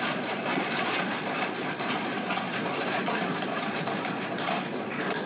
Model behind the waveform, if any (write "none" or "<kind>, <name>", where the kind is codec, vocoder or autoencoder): vocoder, Vocos